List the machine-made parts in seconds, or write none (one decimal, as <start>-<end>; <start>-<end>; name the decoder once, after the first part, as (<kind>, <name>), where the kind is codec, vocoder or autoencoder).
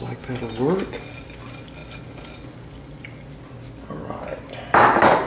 none